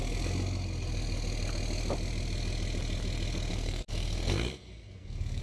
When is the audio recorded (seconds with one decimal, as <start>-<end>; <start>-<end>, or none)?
0.0-3.5